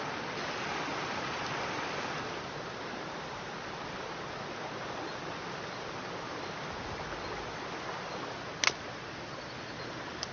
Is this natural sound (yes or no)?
yes